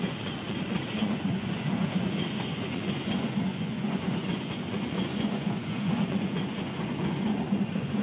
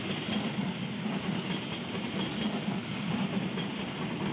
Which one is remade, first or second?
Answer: first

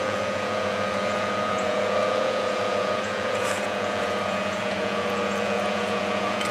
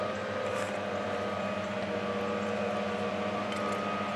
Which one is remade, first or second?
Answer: first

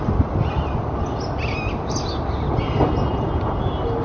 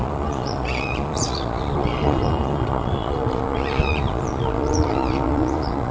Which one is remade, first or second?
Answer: second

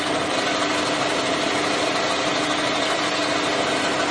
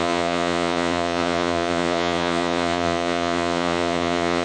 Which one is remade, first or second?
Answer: second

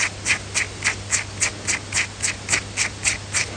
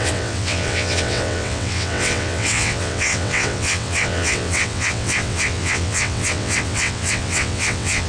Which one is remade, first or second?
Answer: second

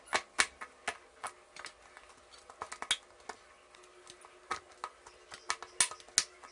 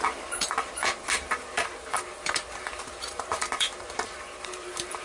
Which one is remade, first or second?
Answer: second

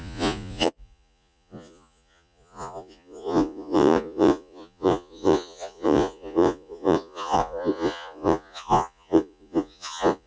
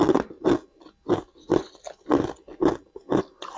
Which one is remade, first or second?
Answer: first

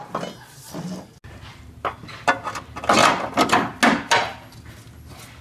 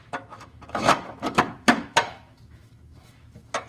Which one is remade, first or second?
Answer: second